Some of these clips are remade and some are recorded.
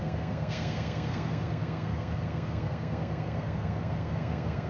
remade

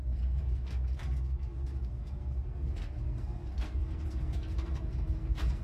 remade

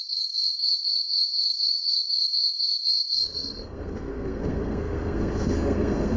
remade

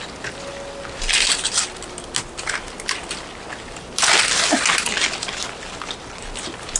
recorded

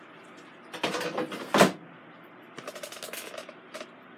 recorded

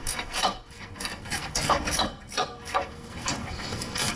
remade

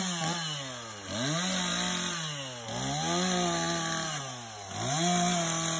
recorded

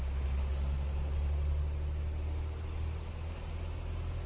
recorded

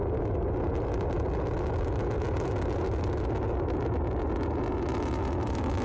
recorded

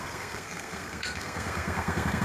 remade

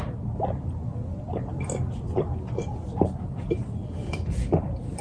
recorded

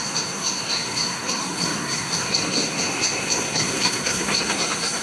remade